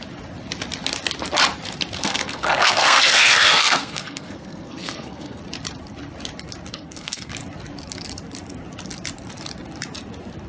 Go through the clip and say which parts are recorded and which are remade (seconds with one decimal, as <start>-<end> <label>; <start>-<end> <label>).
0.0-2.0 recorded; 2.0-5.4 remade; 5.4-6.7 recorded; 6.7-7.3 remade; 7.3-10.5 recorded